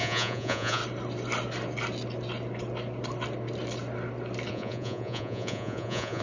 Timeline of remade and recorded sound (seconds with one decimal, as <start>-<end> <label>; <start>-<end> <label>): 0.0-0.8 remade; 0.8-4.5 recorded; 4.5-6.2 remade